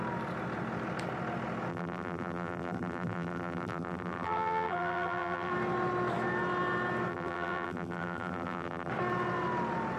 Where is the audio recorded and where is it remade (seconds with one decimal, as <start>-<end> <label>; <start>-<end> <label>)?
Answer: 0.0-1.7 recorded; 1.7-5.5 remade; 5.5-7.1 recorded; 7.1-8.9 remade; 8.9-10.0 recorded